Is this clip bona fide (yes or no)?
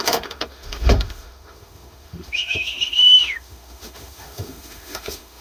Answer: no